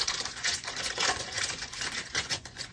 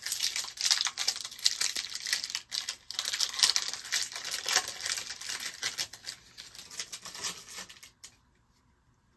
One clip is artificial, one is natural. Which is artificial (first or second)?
first